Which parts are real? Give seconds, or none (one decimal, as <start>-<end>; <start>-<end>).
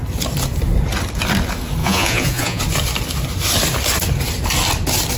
0.0-1.8; 2.6-5.2